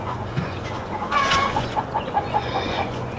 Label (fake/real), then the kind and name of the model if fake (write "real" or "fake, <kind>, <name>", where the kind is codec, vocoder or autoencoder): fake, vocoder, Vocos